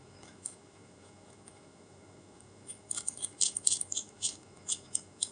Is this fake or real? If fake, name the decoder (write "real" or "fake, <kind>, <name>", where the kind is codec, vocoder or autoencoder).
fake, autoencoder, DAC-VAE